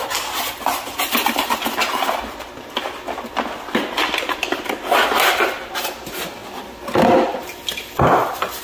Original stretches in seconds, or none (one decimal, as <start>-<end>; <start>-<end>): 0.0-8.6

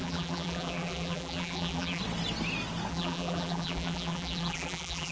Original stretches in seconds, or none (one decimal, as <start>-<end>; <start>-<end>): 2.0-2.9

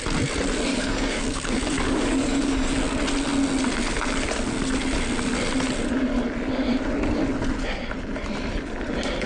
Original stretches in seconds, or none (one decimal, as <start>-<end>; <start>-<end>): 0.0-0.7; 2.7-9.3

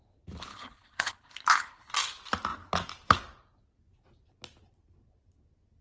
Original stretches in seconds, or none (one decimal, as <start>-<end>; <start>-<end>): 0.0-0.5; 1.9-5.8

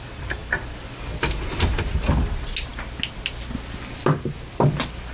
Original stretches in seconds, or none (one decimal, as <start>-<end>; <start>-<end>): 0.0-5.1

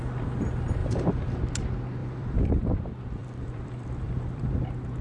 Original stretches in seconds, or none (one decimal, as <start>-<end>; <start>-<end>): 0.0-0.8; 1.4-2.0; 2.6-3.2; 4.6-5.0